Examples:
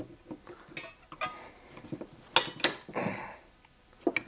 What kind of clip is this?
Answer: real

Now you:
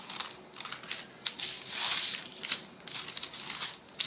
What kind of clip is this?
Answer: real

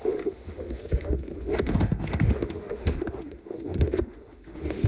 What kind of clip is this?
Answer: fake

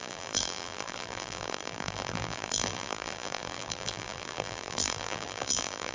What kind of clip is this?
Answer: fake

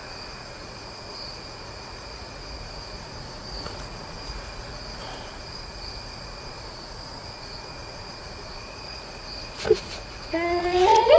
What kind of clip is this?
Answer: fake